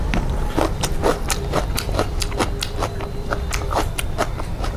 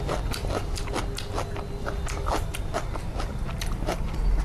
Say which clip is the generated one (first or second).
first